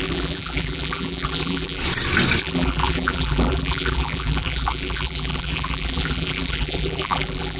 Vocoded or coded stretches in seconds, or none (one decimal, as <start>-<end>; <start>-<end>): 0.0-1.8; 2.4-7.6